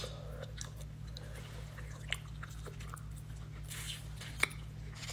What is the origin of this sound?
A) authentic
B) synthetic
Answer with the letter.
A